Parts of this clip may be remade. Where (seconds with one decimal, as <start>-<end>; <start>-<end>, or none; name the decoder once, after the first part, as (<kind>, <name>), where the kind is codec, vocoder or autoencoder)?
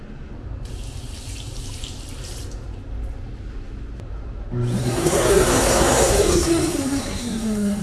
4.8-7.8 (codec, SNAC)